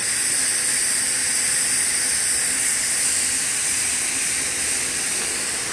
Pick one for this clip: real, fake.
real